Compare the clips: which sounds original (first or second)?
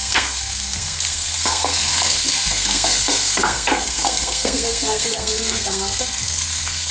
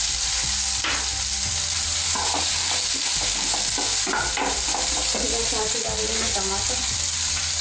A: second